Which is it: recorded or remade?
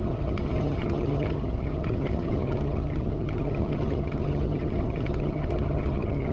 remade